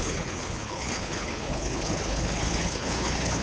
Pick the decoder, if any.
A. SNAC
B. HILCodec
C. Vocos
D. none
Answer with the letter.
B